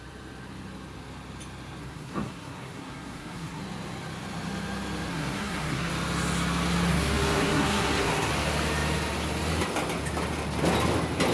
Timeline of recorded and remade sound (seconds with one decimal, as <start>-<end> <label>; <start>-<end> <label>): 0.0-1.8 recorded; 1.8-3.6 remade; 3.6-5.1 recorded; 5.1-5.9 remade; 5.9-6.9 recorded; 6.9-8.3 remade; 8.3-11.3 recorded